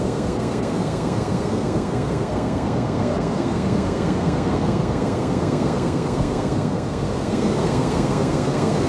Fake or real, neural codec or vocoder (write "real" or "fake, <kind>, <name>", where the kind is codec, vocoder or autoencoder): fake, codec, SNAC